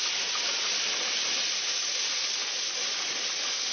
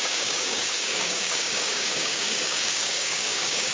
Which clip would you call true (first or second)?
first